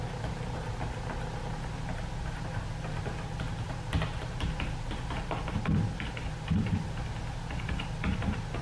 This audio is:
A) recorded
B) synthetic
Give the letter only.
A